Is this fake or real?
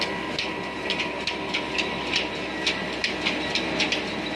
real